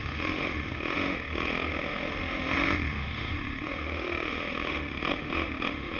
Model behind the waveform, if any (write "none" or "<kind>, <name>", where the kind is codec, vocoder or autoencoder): autoencoder, DAC-VAE